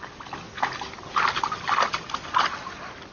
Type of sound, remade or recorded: recorded